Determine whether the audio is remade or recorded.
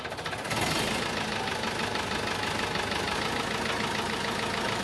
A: recorded